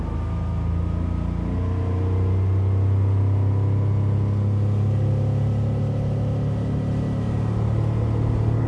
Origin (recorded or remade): recorded